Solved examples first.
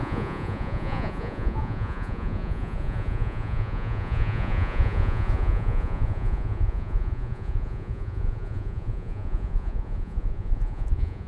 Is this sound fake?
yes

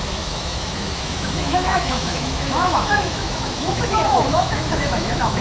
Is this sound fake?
yes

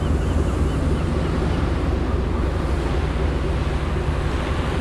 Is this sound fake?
no